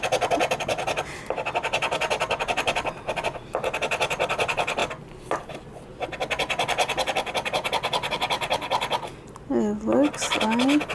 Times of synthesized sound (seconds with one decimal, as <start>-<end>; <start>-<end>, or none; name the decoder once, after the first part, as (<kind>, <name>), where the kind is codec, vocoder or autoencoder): none